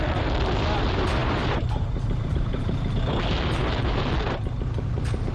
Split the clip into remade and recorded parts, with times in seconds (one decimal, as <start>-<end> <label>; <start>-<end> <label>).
0.0-1.2 recorded; 1.2-2.6 remade; 2.6-5.3 recorded